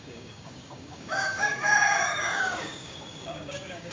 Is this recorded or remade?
remade